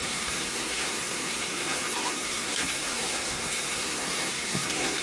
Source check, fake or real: fake